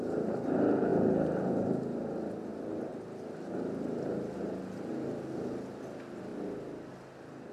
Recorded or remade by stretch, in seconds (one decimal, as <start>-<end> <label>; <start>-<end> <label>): 0.0-7.5 recorded